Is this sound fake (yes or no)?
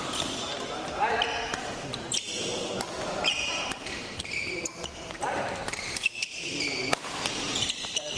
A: yes